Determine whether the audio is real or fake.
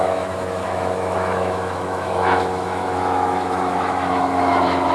fake